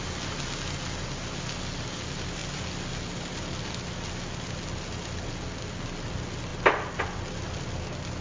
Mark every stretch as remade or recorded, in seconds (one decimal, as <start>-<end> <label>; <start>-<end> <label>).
0.0-8.2 recorded